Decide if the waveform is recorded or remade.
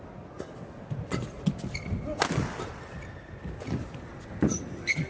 recorded